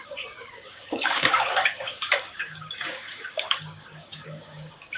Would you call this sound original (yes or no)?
no